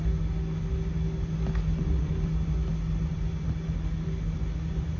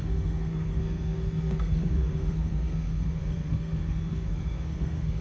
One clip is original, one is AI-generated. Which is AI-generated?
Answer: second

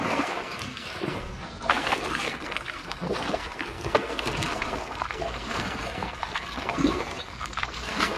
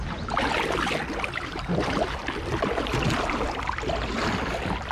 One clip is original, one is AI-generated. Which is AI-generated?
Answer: first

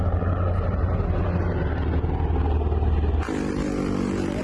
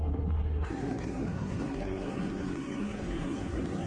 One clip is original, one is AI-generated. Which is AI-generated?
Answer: second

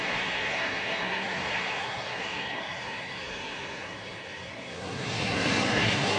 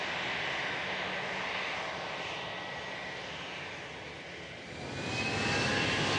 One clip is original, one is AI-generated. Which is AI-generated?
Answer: first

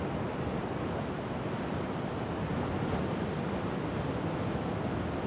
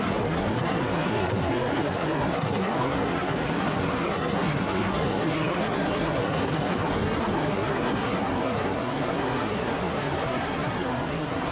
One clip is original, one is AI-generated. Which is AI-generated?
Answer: second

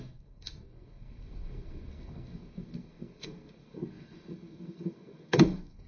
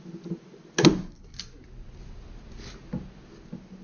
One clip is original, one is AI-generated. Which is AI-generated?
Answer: first